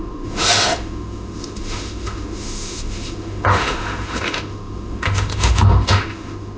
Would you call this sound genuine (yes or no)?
no